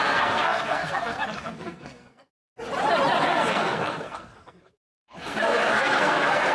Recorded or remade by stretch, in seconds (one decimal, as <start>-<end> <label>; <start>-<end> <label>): 0.0-2.5 remade; 2.5-3.2 recorded; 3.2-6.5 remade